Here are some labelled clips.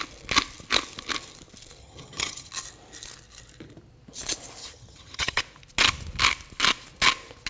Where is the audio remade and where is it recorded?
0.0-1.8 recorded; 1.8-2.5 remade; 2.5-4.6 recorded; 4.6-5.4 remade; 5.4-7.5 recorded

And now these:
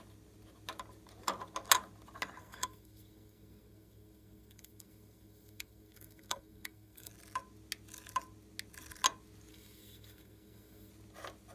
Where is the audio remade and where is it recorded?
0.0-2.4 recorded; 2.4-7.1 remade; 7.1-9.5 recorded; 9.5-10.9 remade; 10.9-11.5 recorded